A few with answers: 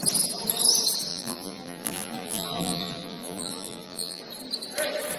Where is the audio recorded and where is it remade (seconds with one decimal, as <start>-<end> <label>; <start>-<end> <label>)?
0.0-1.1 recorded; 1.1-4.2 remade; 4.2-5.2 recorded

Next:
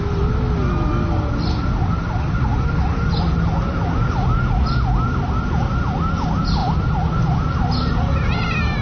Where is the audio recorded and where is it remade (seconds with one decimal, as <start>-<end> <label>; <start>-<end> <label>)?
0.0-8.8 recorded

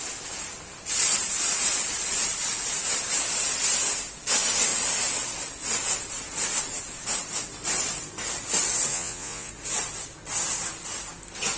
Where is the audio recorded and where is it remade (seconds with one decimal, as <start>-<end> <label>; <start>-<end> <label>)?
0.0-8.9 recorded; 8.9-9.5 remade; 9.5-11.6 recorded

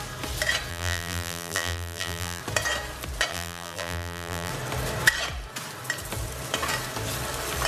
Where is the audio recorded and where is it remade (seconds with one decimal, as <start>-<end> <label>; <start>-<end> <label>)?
0.0-0.7 recorded; 0.7-2.4 remade; 2.4-3.3 recorded; 3.3-4.5 remade; 4.5-7.7 recorded